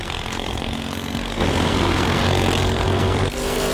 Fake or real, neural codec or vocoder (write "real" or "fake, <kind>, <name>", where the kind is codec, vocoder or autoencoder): fake, codec, SNAC